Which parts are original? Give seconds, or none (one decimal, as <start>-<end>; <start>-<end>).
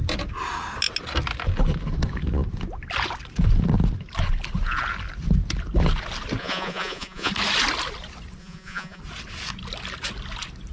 0.0-6.4; 7.3-8.4; 9.0-10.7